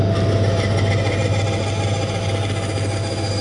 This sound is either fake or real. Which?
real